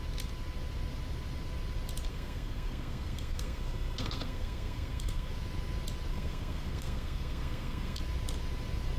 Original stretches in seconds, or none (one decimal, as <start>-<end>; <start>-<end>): 0.0-2.1; 5.3-6.1; 8.0-9.0